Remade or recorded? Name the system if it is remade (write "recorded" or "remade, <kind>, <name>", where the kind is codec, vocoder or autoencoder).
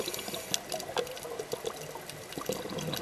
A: recorded